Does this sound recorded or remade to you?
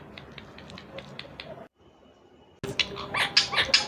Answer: recorded